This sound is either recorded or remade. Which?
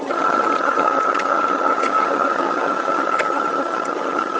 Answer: remade